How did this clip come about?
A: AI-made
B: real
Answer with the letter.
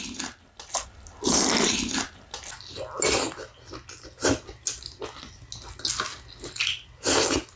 B